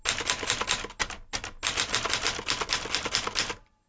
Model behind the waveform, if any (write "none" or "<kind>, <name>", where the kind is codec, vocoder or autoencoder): none